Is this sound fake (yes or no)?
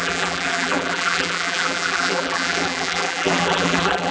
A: yes